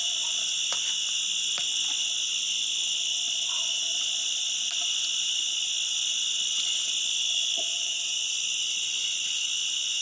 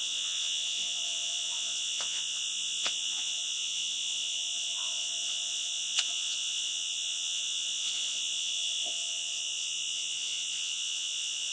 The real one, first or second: first